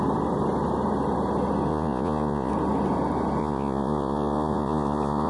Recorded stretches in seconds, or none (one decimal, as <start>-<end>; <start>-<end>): 0.0-1.7; 2.5-3.4